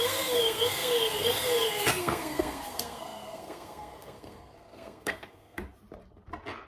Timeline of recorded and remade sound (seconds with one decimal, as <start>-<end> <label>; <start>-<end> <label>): 0.0-5.6 remade; 5.6-6.7 recorded